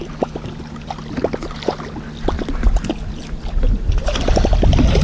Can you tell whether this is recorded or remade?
recorded